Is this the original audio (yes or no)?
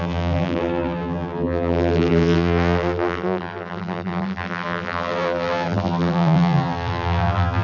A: no